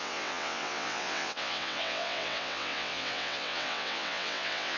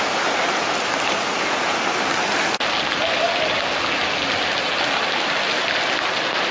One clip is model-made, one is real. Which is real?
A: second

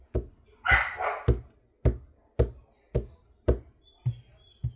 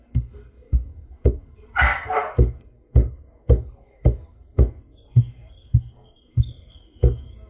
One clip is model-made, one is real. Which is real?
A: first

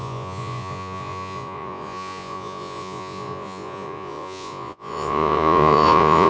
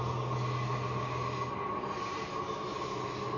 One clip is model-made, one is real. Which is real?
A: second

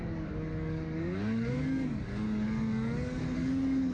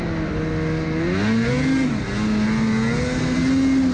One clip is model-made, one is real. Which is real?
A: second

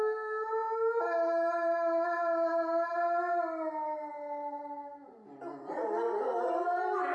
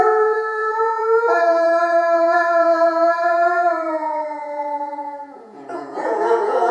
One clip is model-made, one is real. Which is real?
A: first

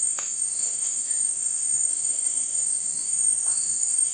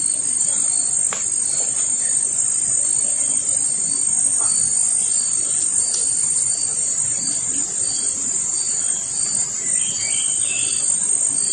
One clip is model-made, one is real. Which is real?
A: second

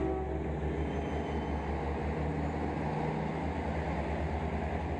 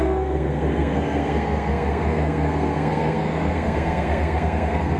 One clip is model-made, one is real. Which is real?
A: first